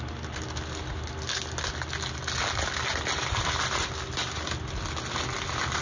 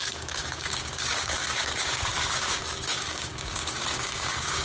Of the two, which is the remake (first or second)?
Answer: second